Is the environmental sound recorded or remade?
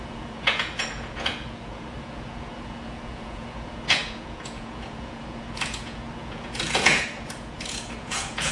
remade